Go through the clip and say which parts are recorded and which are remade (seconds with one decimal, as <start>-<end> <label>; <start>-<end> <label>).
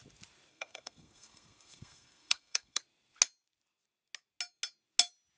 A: 0.0-0.5 recorded; 0.5-2.8 remade; 2.8-5.4 recorded